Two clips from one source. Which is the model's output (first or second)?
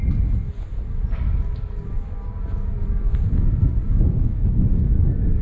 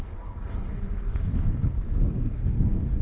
second